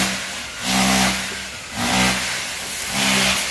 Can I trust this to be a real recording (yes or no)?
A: yes